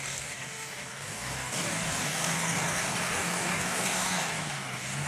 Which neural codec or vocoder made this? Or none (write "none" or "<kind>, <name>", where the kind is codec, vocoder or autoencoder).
codec, DAC